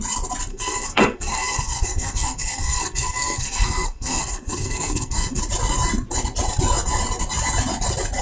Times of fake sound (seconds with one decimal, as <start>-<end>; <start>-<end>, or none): 0.5-5.4